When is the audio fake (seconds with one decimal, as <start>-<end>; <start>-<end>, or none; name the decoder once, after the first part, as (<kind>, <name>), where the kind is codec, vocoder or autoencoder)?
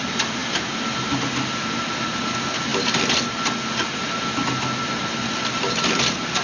none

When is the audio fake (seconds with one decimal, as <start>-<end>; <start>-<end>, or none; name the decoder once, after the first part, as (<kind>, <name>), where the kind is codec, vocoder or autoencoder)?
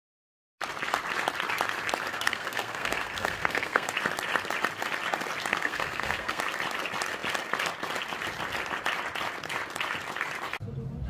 2.1-3.9 (codec, SNAC); 5.5-6.4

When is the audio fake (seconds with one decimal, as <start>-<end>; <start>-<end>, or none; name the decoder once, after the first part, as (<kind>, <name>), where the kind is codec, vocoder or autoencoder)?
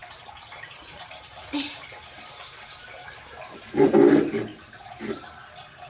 0.0-2.0 (vocoder, BigVGAN v2); 3.0-3.9; 4.5-5.4